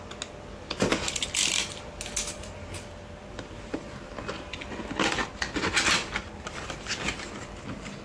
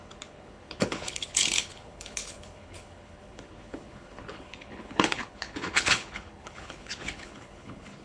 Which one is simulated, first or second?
second